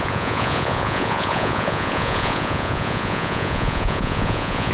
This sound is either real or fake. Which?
fake